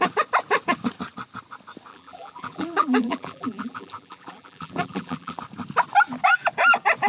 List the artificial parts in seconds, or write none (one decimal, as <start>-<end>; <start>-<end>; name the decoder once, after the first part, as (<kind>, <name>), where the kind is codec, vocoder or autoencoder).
1.9-5.4 (vocoder, BigVGAN v2)